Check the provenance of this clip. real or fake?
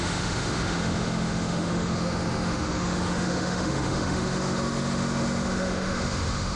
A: fake